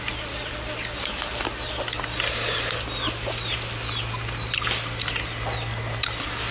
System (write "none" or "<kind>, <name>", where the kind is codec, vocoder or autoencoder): none